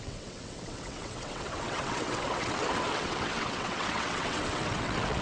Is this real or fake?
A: fake